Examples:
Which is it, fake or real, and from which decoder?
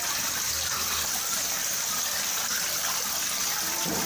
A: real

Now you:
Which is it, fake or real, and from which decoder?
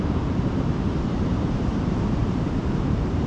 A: fake, vocoder, BigVGAN v2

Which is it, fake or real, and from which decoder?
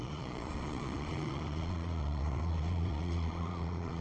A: fake, vocoder, Vocos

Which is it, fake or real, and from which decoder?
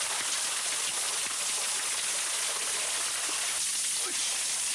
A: real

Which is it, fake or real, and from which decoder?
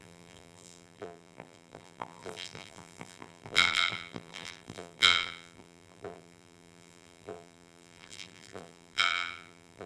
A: fake, vocoder, BigVGAN v2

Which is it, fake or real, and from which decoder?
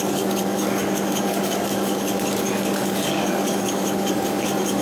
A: fake, codec, DAC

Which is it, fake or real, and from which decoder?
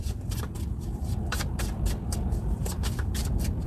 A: fake, vocoder, BigVGAN v2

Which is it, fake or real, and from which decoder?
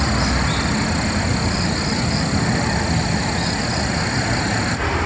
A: real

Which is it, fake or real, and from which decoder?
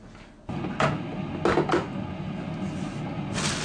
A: real